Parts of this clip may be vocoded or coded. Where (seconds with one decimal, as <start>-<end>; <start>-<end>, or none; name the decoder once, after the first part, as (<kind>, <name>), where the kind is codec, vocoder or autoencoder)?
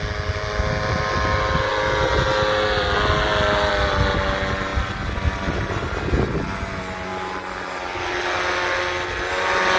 none